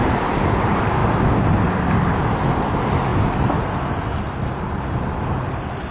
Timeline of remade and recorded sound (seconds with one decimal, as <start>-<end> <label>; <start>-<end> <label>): 0.0-5.9 recorded